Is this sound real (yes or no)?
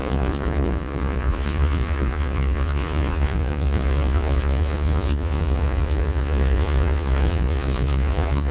no